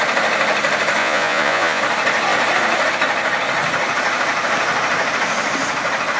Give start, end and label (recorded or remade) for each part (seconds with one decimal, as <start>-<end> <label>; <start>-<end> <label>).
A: 0.0-1.0 recorded; 1.0-1.8 remade; 1.8-6.2 recorded